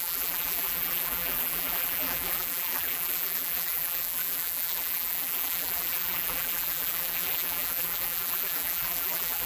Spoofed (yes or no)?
yes